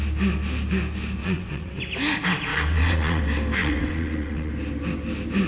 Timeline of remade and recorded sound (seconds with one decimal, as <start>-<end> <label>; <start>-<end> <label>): 0.0-1.2 recorded; 1.2-1.8 remade; 1.8-2.5 recorded; 2.5-3.2 remade; 3.2-3.6 recorded; 3.6-4.5 remade; 4.5-5.5 recorded